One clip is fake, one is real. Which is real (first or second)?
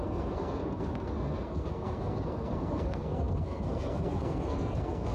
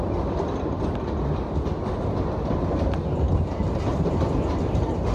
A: second